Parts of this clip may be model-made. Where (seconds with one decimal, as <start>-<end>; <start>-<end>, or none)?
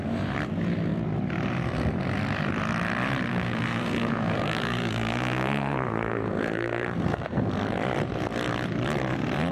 3.3-7.5